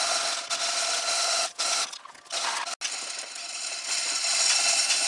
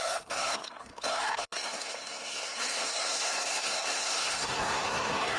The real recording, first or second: first